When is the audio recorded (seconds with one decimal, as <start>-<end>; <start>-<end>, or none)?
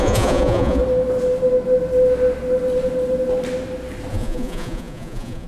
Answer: 0.8-4.1